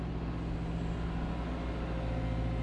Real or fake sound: real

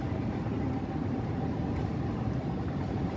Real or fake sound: fake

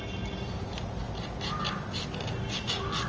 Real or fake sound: real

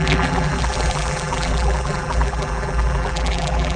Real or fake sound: fake